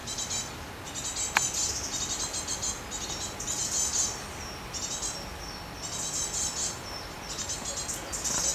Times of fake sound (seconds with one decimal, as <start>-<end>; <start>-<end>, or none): 0.0-0.7